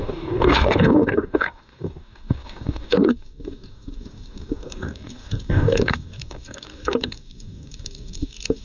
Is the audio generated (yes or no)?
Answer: yes